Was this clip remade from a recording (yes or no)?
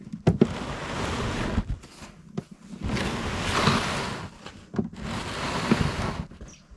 no